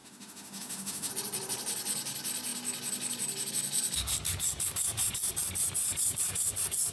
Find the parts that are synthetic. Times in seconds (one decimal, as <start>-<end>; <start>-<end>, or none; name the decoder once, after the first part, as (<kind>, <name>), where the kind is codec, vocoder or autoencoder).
0.0-1.1 (autoencoder, DAC-VAE)